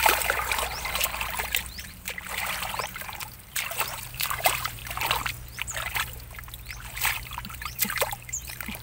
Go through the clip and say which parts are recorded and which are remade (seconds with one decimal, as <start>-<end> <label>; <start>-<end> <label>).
0.0-4.8 remade; 4.8-7.2 recorded; 7.2-8.8 remade